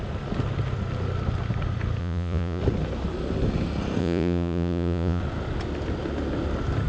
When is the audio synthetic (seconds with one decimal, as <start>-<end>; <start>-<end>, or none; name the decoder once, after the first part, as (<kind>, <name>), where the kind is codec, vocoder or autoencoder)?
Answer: 2.0-2.6 (vocoder, Vocos); 4.0-5.2